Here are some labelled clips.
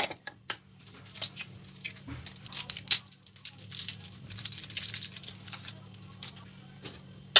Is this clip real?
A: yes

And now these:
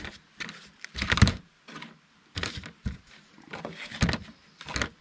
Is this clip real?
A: yes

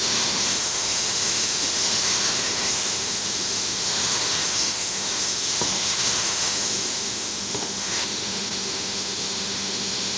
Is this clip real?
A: no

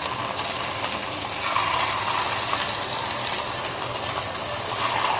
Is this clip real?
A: yes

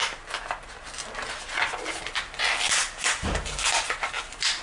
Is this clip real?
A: yes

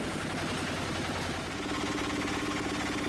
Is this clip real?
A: yes